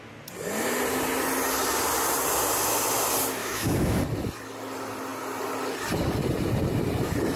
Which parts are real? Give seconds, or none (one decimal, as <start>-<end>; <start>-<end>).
0.0-3.4; 4.0-7.4